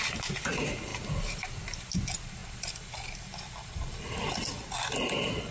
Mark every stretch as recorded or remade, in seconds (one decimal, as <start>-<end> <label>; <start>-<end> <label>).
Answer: 0.0-2.4 recorded; 2.4-5.5 remade